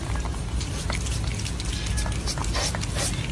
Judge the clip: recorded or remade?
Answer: recorded